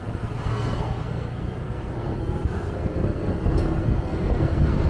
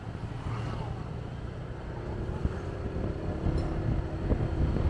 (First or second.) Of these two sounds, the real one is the second